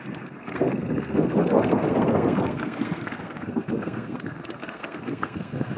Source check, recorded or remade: remade